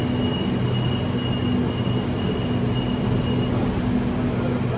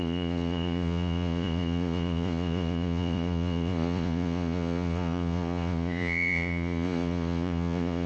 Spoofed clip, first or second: second